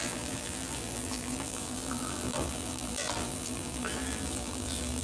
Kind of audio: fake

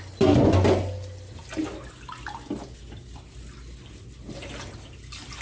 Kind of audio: real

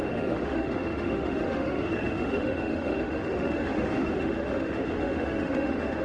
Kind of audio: fake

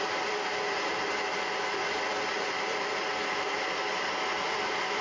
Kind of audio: real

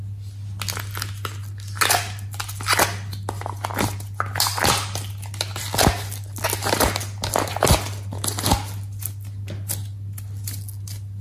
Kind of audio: real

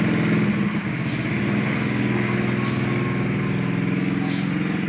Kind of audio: real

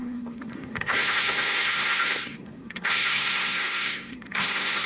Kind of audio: fake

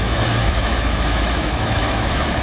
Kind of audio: fake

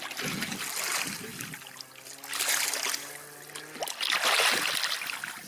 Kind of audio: real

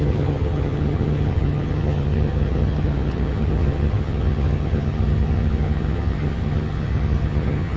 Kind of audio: fake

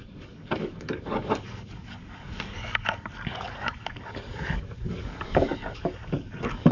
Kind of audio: fake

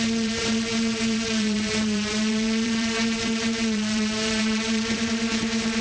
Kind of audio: fake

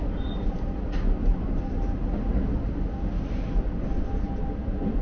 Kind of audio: real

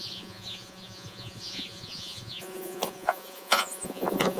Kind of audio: fake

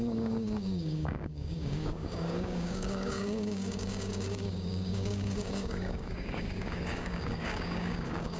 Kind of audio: fake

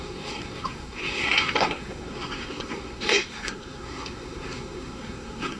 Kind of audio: fake